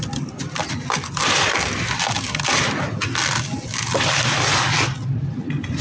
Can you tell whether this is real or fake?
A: real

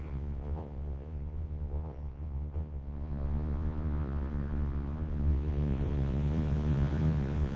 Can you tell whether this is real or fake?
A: fake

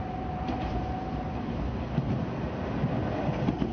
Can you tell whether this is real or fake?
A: real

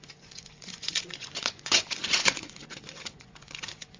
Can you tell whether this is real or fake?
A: fake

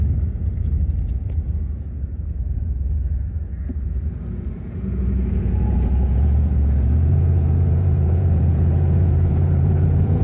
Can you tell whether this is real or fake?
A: fake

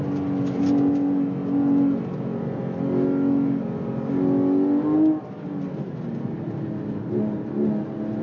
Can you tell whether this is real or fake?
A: real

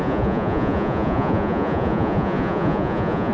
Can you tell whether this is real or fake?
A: fake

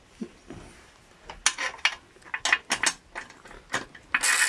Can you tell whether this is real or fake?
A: real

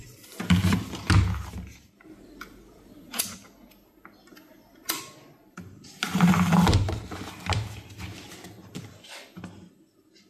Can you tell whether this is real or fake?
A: real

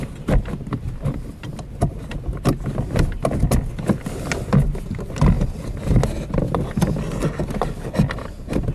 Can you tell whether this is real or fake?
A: real